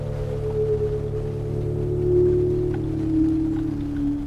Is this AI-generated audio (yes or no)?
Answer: no